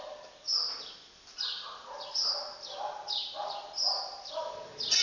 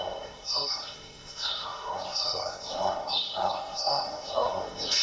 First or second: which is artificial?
second